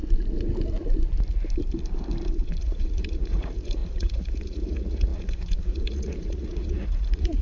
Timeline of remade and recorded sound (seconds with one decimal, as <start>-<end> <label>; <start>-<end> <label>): 0.0-2.6 recorded; 2.6-7.4 remade